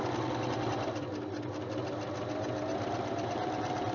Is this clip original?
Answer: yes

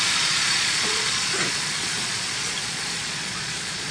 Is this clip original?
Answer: no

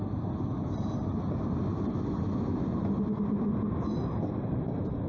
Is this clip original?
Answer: yes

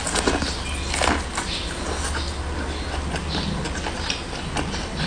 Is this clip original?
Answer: yes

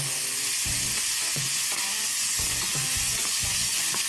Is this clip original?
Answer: no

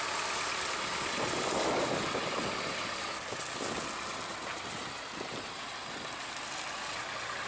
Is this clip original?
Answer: yes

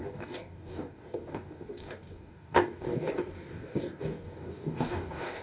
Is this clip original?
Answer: no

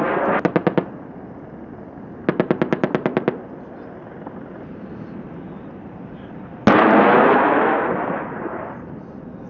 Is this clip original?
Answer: yes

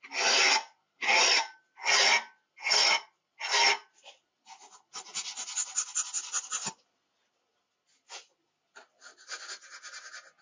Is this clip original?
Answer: yes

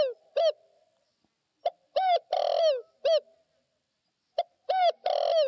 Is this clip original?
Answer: yes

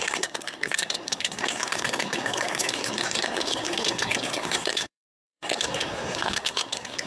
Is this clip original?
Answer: no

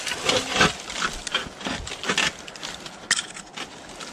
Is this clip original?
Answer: yes